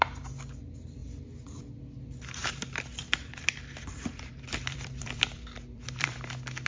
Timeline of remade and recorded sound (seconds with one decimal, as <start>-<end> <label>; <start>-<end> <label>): 0.0-2.4 recorded; 2.4-6.1 remade; 6.1-6.7 recorded